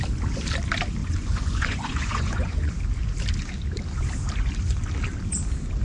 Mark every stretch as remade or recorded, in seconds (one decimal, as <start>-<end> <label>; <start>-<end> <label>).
0.0-1.0 recorded; 1.0-2.7 remade; 2.7-5.8 recorded